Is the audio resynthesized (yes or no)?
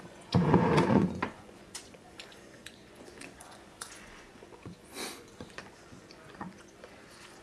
yes